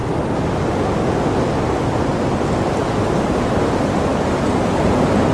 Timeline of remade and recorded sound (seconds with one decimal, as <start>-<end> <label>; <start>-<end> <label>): 0.0-3.2 recorded; 3.2-5.3 remade